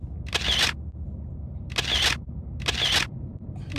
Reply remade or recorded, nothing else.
recorded